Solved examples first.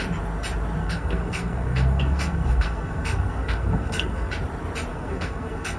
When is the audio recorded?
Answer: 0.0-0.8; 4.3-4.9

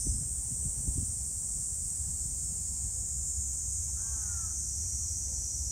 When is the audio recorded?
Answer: 0.0-5.7

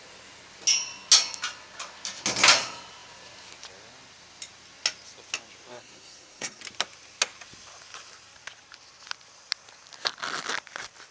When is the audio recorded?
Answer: 0.0-5.7; 6.6-11.1